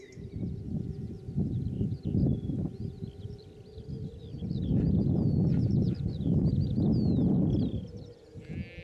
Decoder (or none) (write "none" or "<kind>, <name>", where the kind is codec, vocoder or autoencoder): none